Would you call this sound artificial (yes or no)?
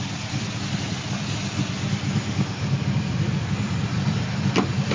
no